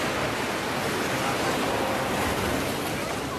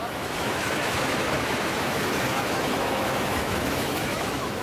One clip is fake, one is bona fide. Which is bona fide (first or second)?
first